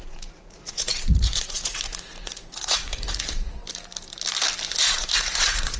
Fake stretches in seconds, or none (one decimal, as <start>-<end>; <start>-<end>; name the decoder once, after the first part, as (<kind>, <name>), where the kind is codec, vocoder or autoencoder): 0.0-3.6 (vocoder, Vocos); 4.7-5.8